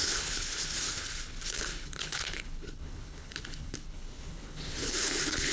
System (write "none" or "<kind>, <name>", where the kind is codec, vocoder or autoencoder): codec, HILCodec